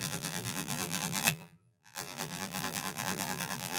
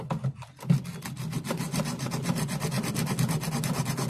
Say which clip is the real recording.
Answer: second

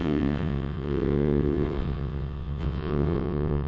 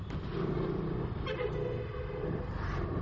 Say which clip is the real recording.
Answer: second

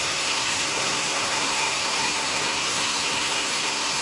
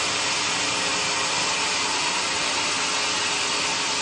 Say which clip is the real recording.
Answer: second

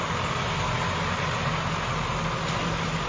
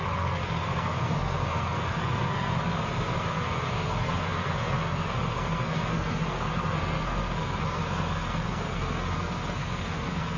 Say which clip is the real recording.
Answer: first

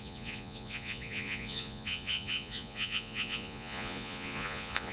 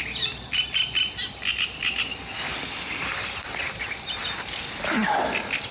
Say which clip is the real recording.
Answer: second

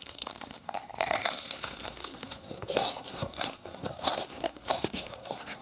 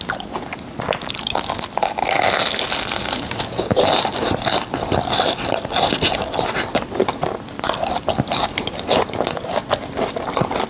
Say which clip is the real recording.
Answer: second